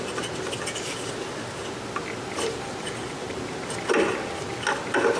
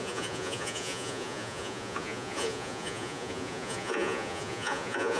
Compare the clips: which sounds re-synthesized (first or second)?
second